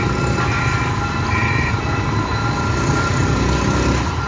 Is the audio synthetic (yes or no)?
no